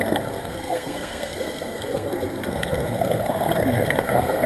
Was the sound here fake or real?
fake